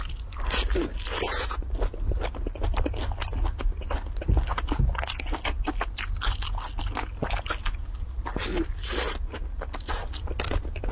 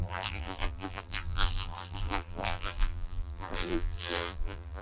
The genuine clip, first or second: first